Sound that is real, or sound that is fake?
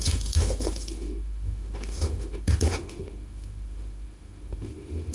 fake